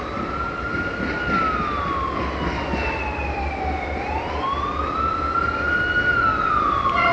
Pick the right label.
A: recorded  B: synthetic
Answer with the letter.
A